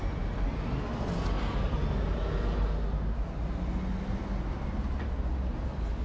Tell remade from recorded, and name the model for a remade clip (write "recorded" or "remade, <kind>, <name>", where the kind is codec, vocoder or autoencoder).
recorded